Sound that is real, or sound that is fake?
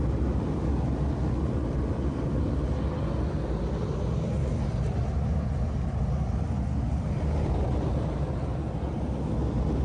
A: real